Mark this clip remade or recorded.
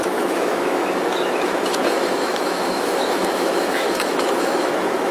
remade